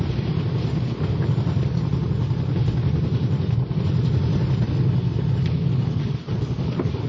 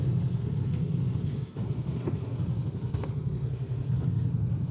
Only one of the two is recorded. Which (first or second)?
first